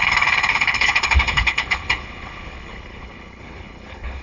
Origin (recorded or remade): remade